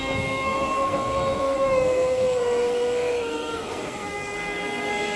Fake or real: fake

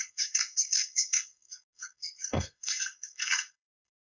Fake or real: fake